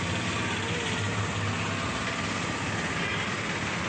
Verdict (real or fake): real